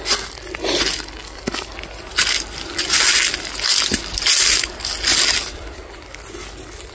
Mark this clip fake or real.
real